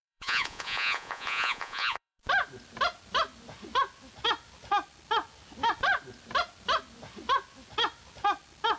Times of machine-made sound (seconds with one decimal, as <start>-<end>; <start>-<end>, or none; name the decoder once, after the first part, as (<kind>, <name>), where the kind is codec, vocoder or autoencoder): 0.0-2.2 (vocoder, Vocos)

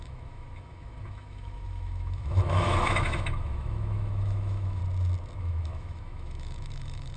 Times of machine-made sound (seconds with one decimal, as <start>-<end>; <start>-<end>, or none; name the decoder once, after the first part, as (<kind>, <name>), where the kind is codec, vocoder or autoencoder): 0.0-4.8 (autoencoder, DAC-VAE); 5.4-7.2